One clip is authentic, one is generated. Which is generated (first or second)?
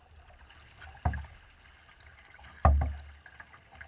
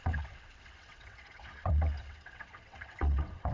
second